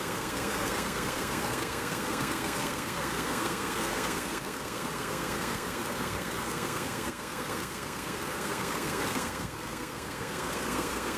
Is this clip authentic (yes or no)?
no